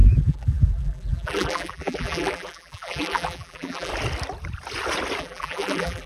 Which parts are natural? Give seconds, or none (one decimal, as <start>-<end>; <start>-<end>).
3.9-5.2